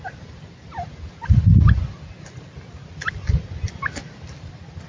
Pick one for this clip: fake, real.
real